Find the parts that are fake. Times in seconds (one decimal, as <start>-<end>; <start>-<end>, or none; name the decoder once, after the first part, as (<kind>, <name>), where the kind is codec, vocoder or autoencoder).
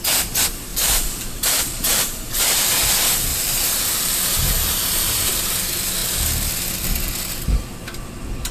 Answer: 0.7-2.4 (vocoder, BigVGAN v2); 3.3-5.3